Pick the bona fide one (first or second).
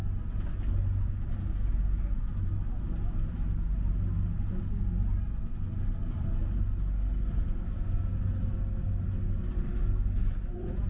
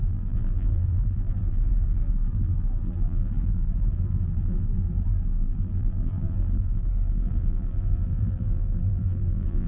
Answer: first